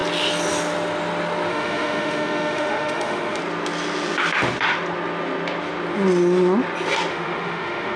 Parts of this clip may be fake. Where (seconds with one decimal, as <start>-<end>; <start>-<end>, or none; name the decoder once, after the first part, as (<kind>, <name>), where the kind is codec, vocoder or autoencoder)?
1.5-3.4 (autoencoder, DAC-VAE); 7.1-8.0